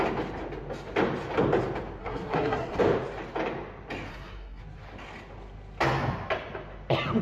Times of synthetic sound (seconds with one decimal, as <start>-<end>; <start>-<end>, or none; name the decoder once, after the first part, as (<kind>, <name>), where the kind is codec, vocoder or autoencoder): 2.0-2.8 (codec, SNAC); 4.1-4.6